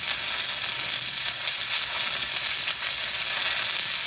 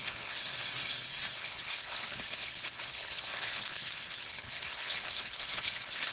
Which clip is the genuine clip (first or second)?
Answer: first